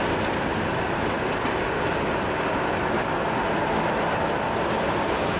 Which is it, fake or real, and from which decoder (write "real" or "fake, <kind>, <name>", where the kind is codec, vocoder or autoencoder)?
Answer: real